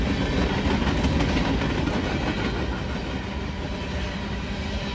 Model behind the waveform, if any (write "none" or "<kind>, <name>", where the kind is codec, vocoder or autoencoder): none